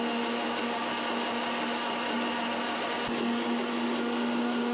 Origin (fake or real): real